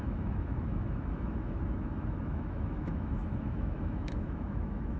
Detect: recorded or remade remade